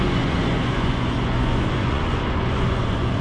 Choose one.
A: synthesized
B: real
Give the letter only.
A